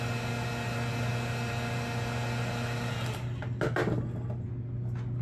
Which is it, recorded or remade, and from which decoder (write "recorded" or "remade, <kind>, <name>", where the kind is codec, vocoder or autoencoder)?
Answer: recorded